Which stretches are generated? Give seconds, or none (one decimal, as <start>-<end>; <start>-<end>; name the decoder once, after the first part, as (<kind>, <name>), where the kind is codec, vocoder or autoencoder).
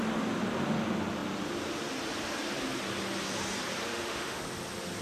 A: 3.9-4.4 (autoencoder, DAC-VAE)